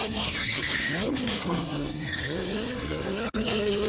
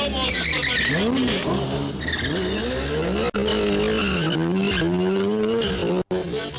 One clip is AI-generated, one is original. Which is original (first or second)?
second